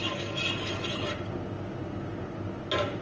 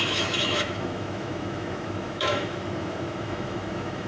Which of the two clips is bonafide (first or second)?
first